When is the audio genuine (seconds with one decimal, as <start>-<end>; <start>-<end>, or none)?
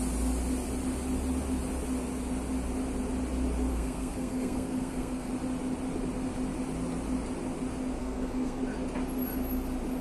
0.0-3.7; 5.3-8.0; 8.6-10.0